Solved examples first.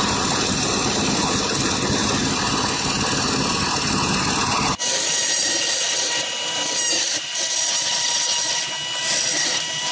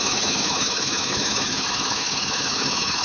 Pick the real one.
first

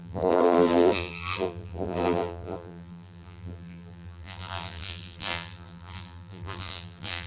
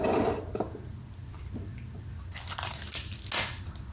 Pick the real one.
second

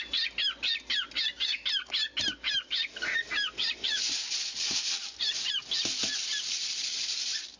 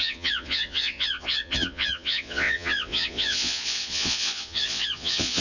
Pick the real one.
first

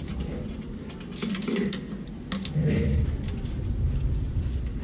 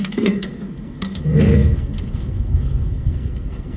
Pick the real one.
first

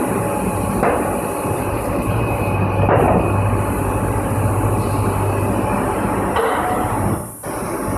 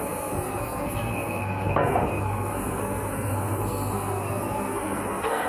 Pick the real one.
first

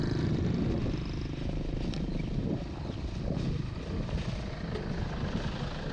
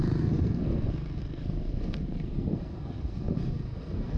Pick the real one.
first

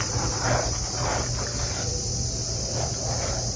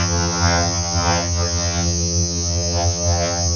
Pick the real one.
first